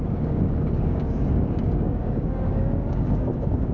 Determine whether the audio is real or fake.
fake